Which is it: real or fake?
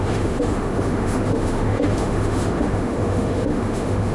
fake